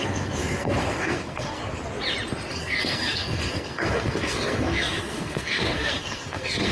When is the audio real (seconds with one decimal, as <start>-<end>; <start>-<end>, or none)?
1.6-2.5